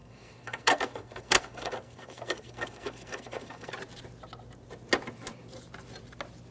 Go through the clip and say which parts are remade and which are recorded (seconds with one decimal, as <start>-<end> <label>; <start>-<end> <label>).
0.0-3.7 remade; 3.7-6.5 recorded